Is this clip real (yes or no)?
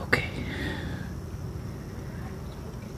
yes